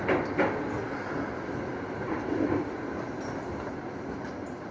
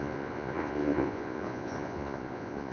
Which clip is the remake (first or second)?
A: second